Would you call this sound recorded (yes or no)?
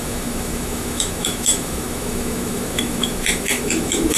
no